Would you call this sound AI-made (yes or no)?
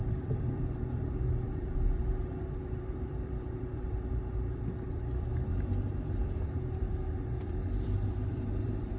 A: yes